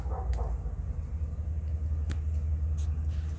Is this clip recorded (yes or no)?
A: yes